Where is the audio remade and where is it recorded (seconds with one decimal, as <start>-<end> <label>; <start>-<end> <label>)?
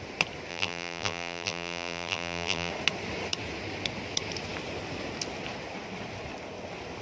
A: 0.0-0.5 recorded; 0.5-2.7 remade; 2.7-7.0 recorded